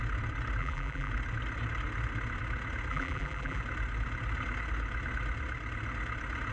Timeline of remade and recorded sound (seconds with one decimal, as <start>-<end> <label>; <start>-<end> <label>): 0.0-0.6 recorded; 0.6-1.1 remade; 1.1-2.9 recorded; 2.9-3.6 remade; 3.6-6.5 recorded